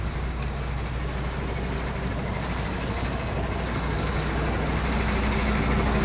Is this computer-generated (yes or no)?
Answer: no